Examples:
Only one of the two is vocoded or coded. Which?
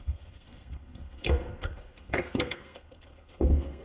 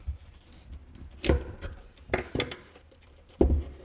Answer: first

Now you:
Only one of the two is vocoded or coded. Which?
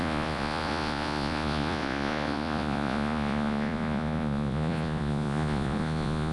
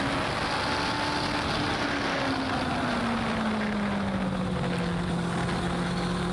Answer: first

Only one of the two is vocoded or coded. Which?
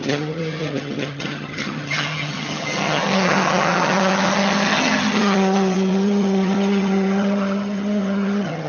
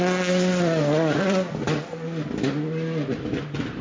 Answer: first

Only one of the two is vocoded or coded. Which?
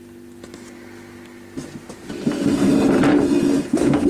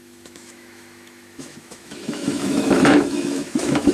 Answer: second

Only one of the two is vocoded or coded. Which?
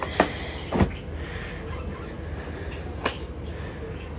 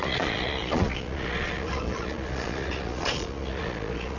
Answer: second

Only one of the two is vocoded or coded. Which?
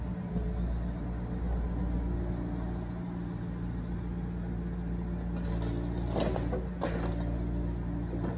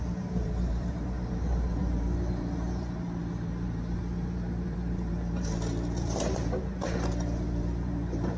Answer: second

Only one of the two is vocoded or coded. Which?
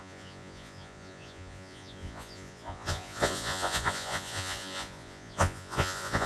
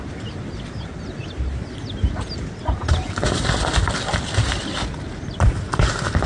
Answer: first